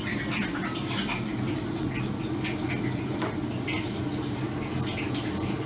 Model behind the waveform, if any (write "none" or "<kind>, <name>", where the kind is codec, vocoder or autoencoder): none